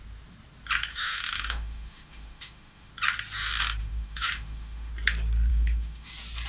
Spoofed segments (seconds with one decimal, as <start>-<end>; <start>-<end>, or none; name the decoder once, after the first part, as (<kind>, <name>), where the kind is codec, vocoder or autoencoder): 0.9-2.9 (autoencoder, DAC-VAE); 3.8-4.9; 5.5-6.1